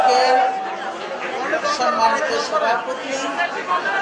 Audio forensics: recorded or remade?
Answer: recorded